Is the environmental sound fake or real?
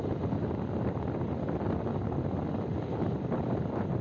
real